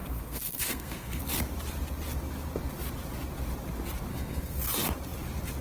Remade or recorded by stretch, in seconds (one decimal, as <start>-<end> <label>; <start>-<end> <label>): 0.0-1.2 remade; 1.2-4.1 recorded; 4.1-4.6 remade; 4.6-5.6 recorded